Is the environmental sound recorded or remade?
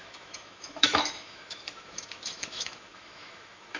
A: remade